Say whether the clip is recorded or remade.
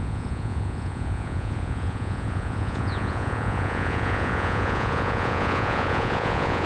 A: remade